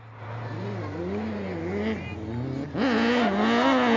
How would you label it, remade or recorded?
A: recorded